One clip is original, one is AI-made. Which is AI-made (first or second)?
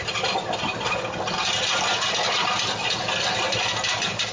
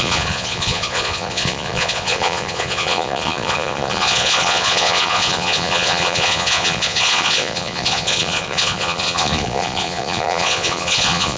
second